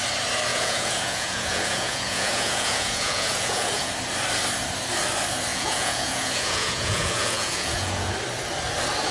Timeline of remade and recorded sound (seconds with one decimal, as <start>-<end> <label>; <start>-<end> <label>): 0.0-0.5 recorded; 0.5-3.9 remade; 3.9-5.5 recorded; 5.5-8.1 remade; 8.1-9.1 recorded